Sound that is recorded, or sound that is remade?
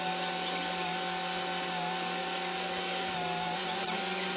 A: recorded